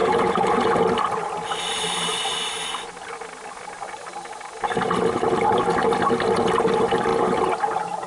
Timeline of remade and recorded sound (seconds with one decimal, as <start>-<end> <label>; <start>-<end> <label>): 0.0-8.1 recorded